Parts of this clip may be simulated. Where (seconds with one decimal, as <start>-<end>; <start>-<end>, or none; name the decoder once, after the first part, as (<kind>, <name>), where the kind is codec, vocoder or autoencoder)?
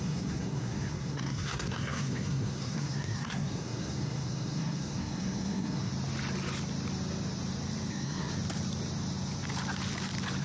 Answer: 0.0-5.9 (codec, SNAC); 7.9-8.3